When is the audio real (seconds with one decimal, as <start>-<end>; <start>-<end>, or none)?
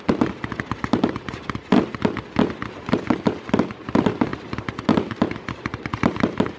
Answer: 0.0-6.6